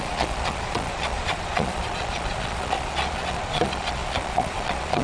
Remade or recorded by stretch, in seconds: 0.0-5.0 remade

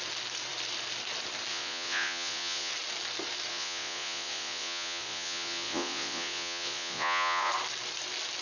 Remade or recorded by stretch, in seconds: 0.0-1.5 recorded; 1.5-2.7 remade; 2.7-3.5 recorded; 3.5-7.5 remade; 7.5-8.4 recorded

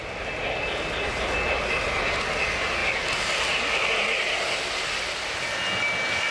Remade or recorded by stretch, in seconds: 0.0-6.3 recorded

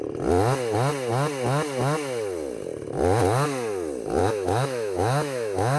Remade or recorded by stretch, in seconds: 0.0-4.2 recorded; 4.2-5.8 remade

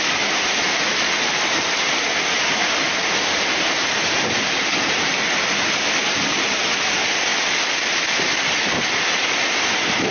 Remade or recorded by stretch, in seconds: 0.0-7.3 recorded; 7.3-8.7 remade; 8.7-10.1 recorded

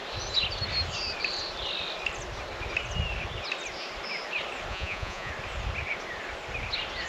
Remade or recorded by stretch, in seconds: 0.0-4.7 recorded; 4.7-5.3 remade; 5.3-7.1 recorded